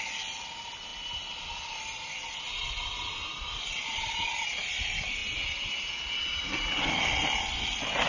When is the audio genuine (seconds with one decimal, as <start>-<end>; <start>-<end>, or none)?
3.8-4.7; 5.2-7.4